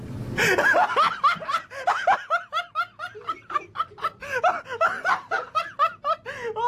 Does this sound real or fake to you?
real